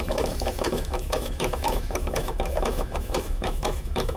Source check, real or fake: fake